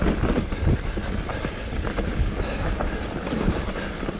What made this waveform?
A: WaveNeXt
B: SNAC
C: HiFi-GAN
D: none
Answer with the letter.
D